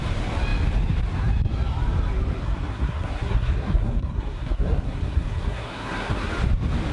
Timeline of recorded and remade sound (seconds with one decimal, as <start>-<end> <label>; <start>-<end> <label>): 0.0-2.4 recorded; 2.4-6.3 remade; 6.3-6.9 recorded